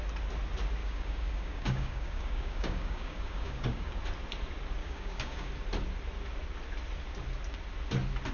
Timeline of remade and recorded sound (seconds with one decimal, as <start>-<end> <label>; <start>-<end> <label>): 0.0-0.8 recorded; 0.8-3.9 remade; 3.9-4.8 recorded; 4.8-5.5 remade; 5.5-8.3 recorded